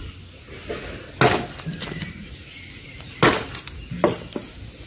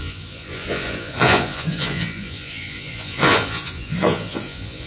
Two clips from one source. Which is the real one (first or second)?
first